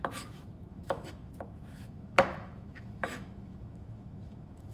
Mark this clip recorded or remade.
remade